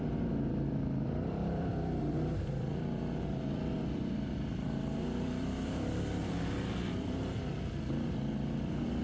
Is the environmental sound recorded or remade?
remade